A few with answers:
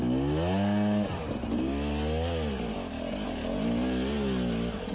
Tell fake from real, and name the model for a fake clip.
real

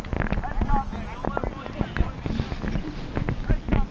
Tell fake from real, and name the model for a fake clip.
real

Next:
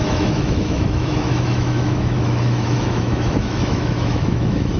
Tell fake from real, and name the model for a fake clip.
fake, autoencoder, DAC-VAE